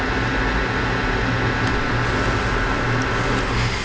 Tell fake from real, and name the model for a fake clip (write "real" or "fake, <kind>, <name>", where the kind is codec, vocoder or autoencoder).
real